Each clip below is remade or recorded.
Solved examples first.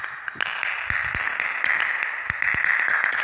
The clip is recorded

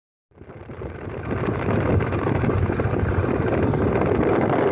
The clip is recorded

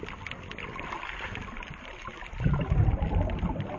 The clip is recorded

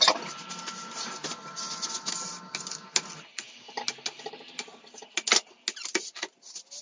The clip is recorded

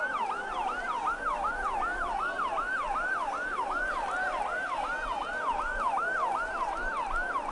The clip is recorded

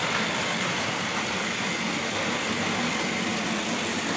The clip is recorded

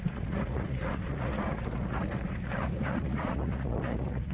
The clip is remade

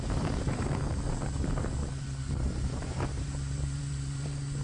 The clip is remade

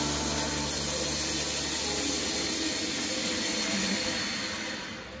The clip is recorded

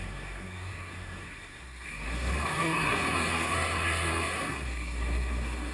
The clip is remade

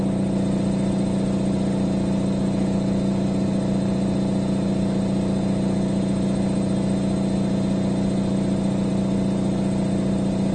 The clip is recorded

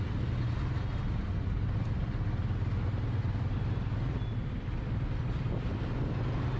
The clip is recorded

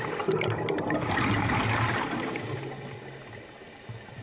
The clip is recorded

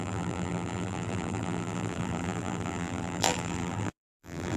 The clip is remade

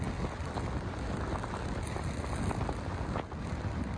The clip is recorded